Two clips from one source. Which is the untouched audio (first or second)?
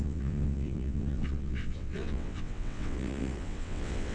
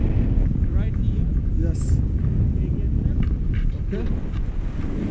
second